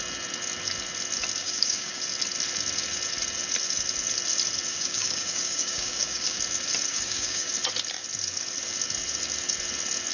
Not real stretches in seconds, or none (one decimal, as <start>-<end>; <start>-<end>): 1.4-2.0; 4.7-6.4; 6.9-7.5